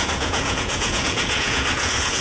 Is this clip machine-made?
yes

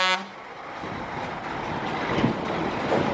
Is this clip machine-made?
no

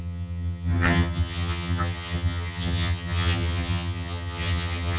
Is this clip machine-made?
yes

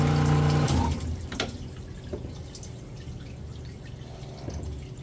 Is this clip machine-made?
no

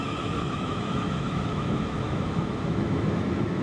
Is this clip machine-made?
yes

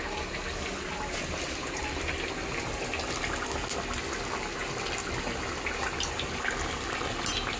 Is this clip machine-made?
no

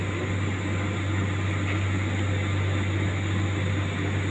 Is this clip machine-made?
no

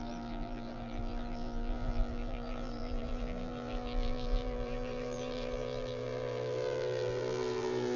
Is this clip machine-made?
yes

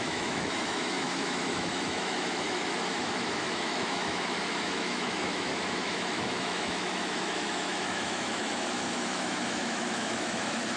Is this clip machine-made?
yes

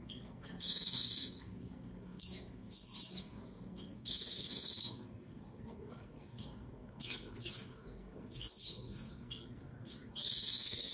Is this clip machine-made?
yes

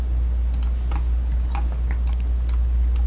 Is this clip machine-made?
no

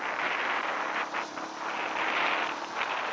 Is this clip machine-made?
no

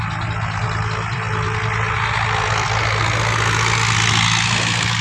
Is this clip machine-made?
no